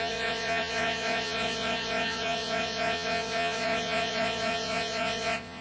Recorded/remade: remade